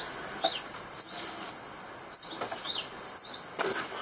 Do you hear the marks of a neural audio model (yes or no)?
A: no